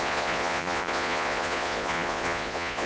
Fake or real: fake